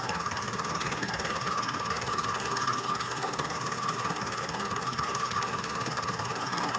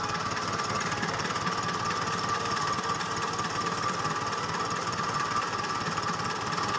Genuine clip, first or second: second